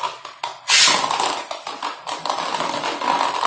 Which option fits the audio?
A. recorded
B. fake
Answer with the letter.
A